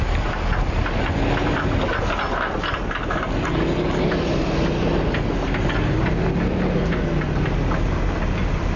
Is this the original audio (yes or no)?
yes